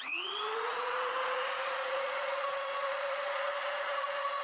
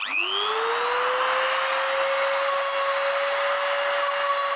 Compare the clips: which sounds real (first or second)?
second